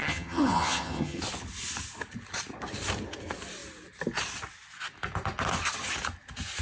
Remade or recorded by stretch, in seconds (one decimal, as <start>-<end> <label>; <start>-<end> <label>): 0.0-1.2 remade; 1.2-6.6 recorded